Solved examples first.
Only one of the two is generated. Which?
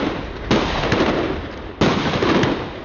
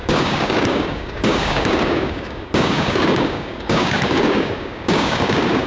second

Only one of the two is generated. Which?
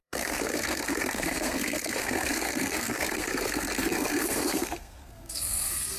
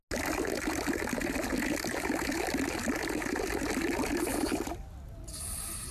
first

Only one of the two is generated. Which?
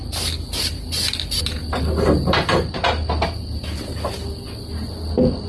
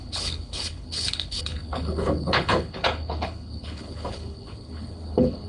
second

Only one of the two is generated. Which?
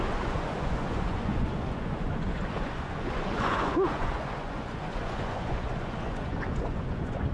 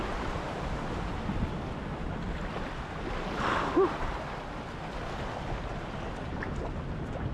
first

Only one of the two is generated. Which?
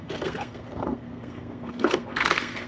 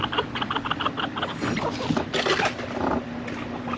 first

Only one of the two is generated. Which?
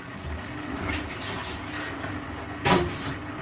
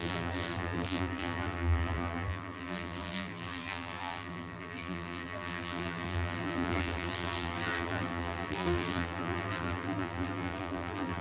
second